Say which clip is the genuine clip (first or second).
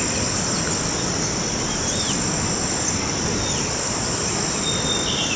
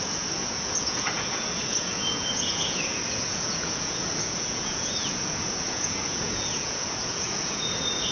first